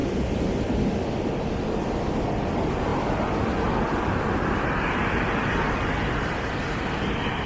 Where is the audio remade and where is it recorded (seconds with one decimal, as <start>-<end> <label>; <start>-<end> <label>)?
0.0-0.8 remade; 0.8-2.9 recorded; 2.9-5.5 remade; 5.5-7.5 recorded